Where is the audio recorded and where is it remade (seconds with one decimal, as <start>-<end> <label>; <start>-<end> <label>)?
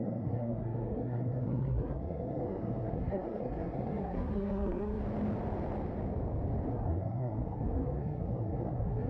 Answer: 0.0-5.0 remade; 5.0-6.7 recorded; 6.7-9.1 remade